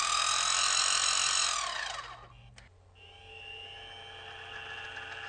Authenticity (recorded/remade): recorded